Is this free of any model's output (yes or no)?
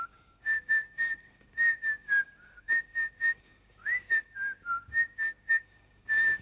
no